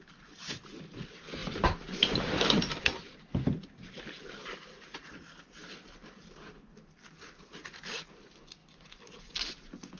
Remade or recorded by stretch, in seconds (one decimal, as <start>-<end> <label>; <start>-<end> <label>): 0.0-1.4 recorded; 1.4-6.6 remade; 6.6-10.0 recorded